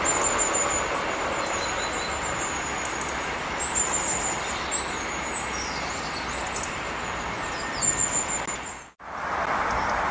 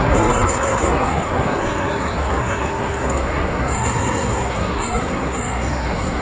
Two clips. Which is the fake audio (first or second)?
second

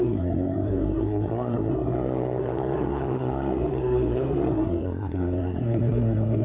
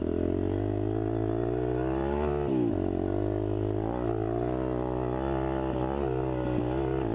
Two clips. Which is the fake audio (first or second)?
first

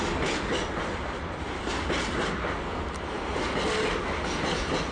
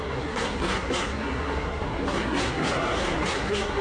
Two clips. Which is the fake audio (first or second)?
second